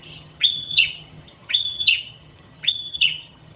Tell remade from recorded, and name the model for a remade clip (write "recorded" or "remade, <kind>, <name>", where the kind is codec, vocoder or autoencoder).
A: remade, vocoder, HiFi-GAN